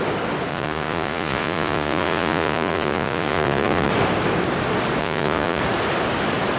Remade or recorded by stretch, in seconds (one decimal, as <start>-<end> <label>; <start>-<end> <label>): 0.0-0.5 recorded; 0.5-3.9 remade; 3.9-5.0 recorded; 5.0-5.6 remade; 5.6-6.6 recorded